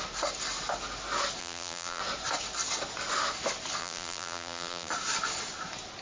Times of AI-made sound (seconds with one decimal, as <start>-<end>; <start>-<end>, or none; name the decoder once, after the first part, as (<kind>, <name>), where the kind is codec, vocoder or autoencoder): 1.4-2.0 (vocoder, BigVGAN v2); 3.8-4.9